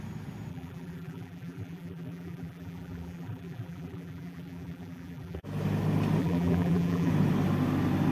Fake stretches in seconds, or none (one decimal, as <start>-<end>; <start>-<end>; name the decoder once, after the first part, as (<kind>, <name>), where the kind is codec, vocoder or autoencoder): 0.5-5.4 (vocoder, BigVGAN v2); 6.2-7.1